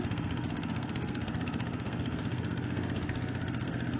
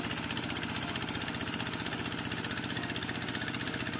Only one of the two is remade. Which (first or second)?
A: first